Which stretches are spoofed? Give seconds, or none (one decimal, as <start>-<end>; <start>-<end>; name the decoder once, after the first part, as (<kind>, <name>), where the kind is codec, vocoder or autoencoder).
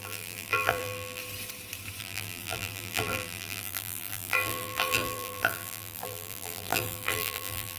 0.0-1.2 (vocoder, BigVGAN v2); 2.0-7.8